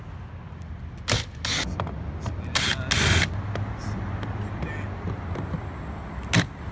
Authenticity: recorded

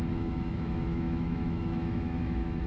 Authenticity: remade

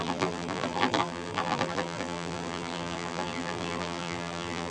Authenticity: remade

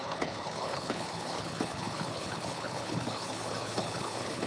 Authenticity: remade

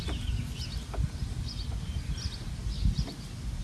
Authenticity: recorded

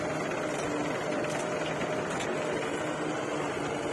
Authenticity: recorded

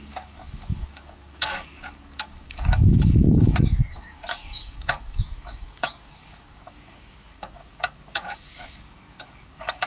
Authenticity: remade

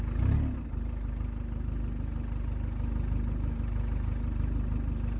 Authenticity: recorded